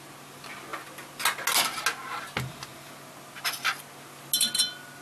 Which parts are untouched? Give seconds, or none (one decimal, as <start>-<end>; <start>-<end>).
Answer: 0.0-5.0